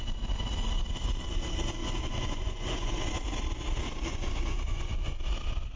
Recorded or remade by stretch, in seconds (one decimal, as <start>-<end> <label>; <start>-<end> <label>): 0.0-1.8 recorded; 1.8-2.9 remade; 2.9-4.1 recorded; 4.1-5.2 remade; 5.2-5.8 recorded